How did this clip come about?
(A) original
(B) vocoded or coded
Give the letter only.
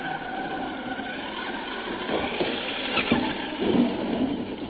A